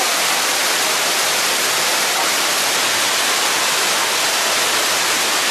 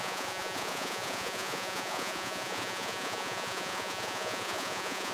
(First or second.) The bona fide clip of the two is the first